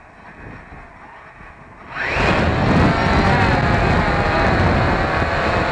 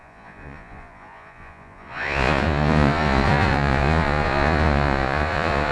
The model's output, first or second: second